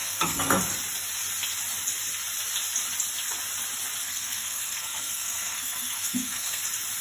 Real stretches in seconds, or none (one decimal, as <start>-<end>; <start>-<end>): 0.6-4.0; 6.6-7.0